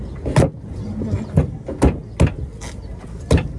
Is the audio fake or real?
real